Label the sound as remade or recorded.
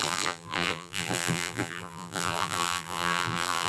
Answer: remade